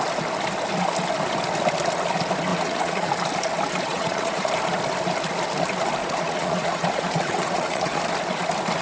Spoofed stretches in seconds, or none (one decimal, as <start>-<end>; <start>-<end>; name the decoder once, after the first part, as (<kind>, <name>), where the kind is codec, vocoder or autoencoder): 2.5-3.1 (vocoder, Vocos); 3.9-4.5; 6.0-8.0